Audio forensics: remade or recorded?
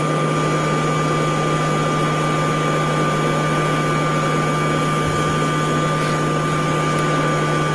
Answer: recorded